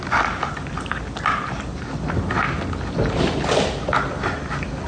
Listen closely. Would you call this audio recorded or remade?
recorded